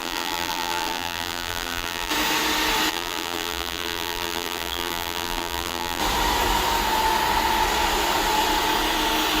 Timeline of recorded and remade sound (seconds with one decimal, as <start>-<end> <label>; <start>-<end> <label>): 0.0-2.1 remade; 2.1-2.9 recorded; 2.9-6.0 remade; 6.0-9.4 recorded

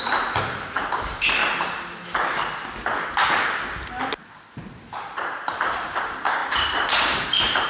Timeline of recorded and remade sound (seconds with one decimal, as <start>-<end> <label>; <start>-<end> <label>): 0.0-1.4 remade; 1.4-4.0 recorded; 4.0-7.7 remade

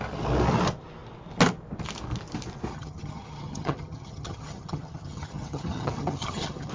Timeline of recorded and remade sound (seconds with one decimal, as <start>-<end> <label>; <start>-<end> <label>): 0.0-2.7 recorded; 2.7-6.7 remade

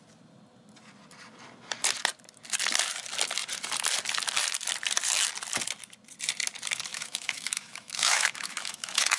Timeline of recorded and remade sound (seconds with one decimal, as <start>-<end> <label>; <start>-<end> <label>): 0.0-6.9 recorded; 6.9-9.2 remade

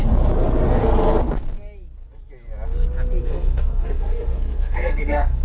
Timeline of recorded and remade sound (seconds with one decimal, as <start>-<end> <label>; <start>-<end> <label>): 0.0-3.2 recorded; 3.2-5.4 remade